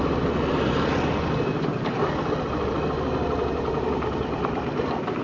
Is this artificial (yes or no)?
no